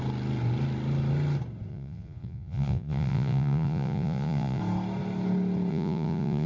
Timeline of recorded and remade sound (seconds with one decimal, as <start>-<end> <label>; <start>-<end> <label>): 0.0-1.7 recorded; 1.7-4.6 remade; 4.6-5.7 recorded; 5.7-6.5 remade